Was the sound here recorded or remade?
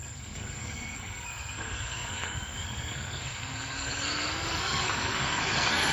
remade